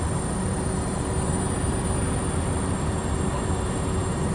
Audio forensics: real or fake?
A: real